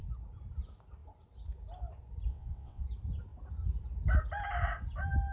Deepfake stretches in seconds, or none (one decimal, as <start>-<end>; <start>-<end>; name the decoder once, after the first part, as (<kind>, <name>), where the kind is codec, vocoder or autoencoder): 2.3-2.8 (vocoder, WaveNeXt)